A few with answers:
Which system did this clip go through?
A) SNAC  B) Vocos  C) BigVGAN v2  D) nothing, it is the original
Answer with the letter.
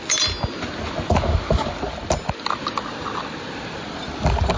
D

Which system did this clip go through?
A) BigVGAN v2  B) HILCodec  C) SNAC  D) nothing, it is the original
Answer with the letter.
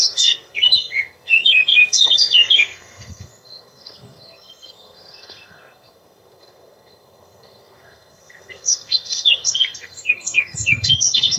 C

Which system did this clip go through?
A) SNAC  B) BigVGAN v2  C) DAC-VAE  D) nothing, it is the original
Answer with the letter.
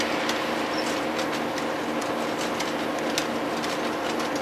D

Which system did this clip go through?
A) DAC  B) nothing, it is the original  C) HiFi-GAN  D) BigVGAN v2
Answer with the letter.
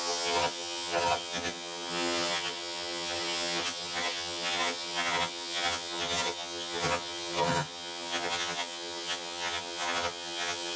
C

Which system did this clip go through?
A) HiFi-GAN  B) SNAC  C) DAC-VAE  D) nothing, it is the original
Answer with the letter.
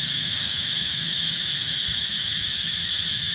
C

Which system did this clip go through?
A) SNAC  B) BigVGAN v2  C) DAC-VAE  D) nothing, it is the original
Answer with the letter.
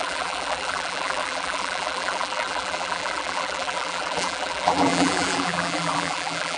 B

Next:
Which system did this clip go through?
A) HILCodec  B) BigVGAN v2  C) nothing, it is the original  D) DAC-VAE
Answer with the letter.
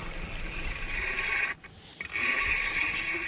C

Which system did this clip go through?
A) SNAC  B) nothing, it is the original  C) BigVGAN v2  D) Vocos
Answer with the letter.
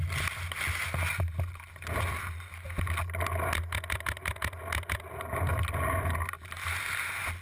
B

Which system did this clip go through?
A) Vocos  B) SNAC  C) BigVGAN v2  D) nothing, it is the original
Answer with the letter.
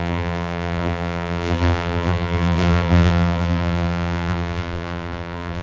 C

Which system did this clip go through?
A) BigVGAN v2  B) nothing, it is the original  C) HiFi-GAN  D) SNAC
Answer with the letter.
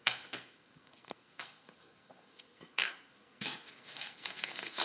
D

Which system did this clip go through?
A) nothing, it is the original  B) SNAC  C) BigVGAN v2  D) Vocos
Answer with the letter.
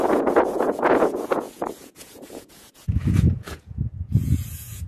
D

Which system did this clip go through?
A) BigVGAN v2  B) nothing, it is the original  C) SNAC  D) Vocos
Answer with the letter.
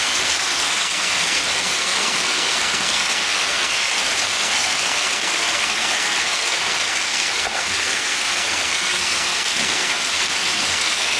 C